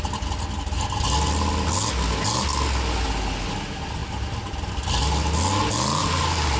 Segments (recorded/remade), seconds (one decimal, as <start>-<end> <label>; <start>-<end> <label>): 0.0-4.0 recorded; 4.0-4.7 remade; 4.7-6.0 recorded; 6.0-6.6 remade